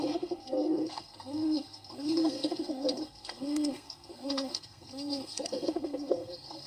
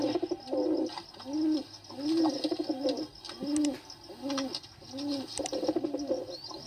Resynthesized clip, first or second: first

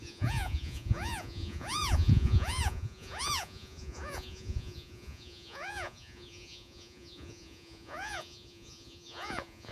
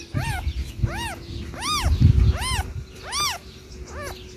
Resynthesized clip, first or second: first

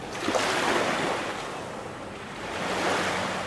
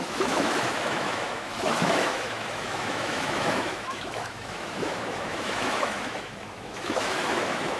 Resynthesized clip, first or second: second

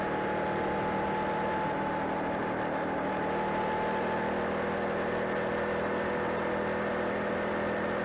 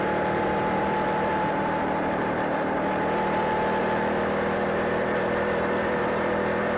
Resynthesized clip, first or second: second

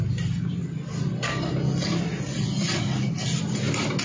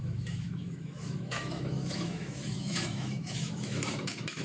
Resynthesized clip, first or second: second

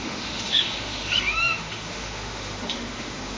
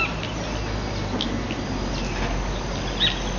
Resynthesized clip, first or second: first